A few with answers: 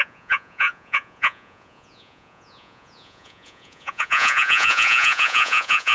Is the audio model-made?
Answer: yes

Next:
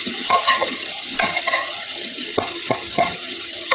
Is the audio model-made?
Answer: yes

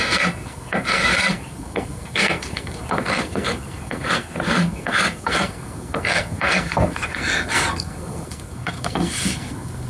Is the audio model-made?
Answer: yes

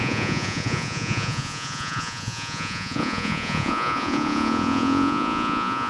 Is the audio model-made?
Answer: yes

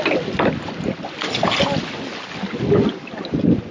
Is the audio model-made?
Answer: no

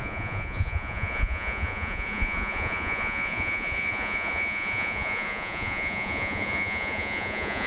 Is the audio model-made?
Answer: yes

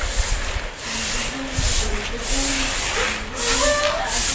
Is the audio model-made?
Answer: no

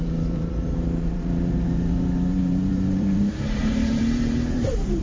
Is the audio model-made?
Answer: yes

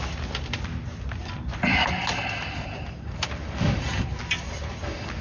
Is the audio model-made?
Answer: no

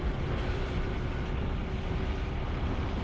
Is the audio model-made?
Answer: no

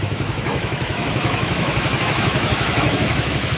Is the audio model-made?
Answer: yes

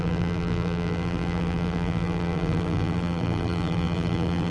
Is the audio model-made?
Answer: yes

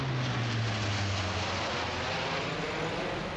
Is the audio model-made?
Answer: no